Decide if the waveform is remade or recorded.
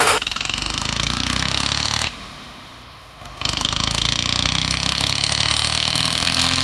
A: remade